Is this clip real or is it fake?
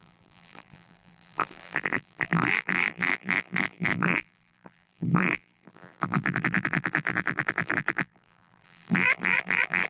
fake